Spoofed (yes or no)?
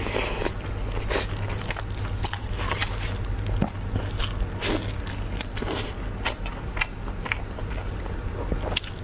no